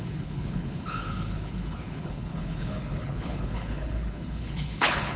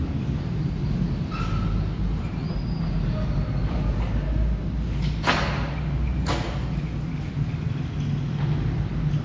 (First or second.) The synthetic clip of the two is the first